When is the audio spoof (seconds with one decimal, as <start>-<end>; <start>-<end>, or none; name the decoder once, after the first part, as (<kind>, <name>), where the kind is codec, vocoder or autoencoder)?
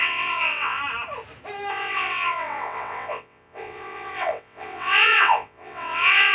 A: 0.0-0.8 (vocoder, WaveNeXt); 1.7-6.3